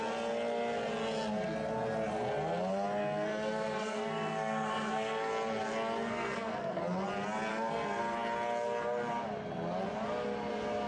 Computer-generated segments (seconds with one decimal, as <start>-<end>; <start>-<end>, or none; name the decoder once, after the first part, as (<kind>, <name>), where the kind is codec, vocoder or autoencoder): 3.0-5.3 (codec, SNAC); 6.1-6.8; 7.5-8.0